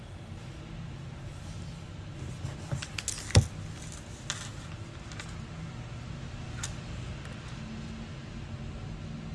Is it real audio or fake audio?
real